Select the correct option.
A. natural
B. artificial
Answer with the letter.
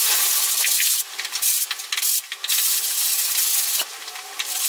A